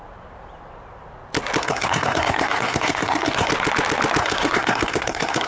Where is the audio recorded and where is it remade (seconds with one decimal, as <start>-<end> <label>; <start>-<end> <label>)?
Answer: 0.0-1.6 recorded; 1.6-3.5 remade; 3.5-4.2 recorded; 4.2-5.5 remade